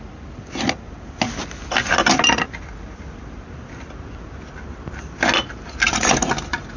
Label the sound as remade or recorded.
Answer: recorded